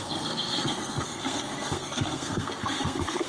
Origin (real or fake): fake